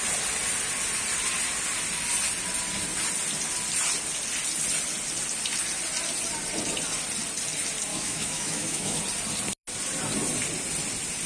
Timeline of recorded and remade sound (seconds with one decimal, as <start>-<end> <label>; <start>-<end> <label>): 0.0-7.9 recorded; 7.9-9.0 remade; 9.0-11.3 recorded